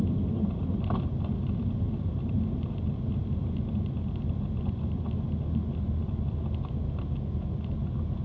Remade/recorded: recorded